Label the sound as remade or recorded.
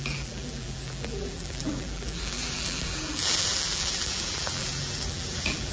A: remade